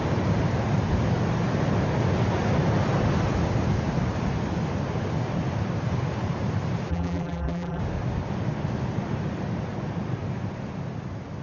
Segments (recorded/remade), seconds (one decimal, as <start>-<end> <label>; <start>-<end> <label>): 0.0-6.9 recorded; 6.9-7.8 remade; 7.8-11.4 recorded